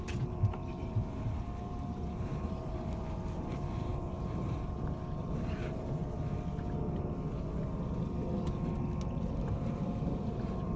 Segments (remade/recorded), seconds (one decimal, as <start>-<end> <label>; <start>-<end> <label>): 0.0-3.0 remade; 3.0-3.5 recorded; 3.5-6.0 remade; 6.0-9.5 recorded; 9.5-10.8 remade